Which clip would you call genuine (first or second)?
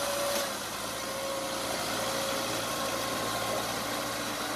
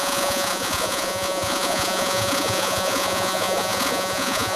first